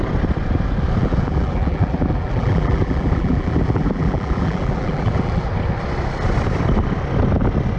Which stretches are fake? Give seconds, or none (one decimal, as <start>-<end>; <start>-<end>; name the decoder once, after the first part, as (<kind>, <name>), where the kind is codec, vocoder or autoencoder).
1.0-5.4 (vocoder, BigVGAN v2)